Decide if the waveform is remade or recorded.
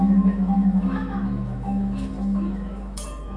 remade